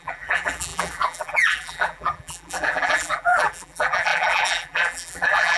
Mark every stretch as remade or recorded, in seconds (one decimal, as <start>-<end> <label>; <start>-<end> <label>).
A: 0.0-5.6 remade